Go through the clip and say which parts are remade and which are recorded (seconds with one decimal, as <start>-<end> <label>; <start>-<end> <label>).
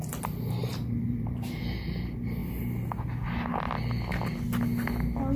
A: 0.0-0.6 recorded; 0.6-1.6 remade; 1.6-5.4 recorded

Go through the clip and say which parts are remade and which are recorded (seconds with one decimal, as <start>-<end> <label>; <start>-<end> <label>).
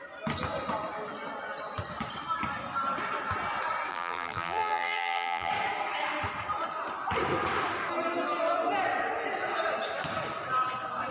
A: 0.0-3.9 recorded; 3.9-5.5 remade; 5.5-11.1 recorded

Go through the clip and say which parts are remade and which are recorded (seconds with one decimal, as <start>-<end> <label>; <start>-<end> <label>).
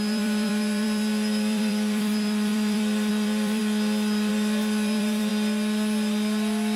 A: 0.0-3.6 remade; 3.6-4.3 recorded; 4.3-5.3 remade; 5.3-6.8 recorded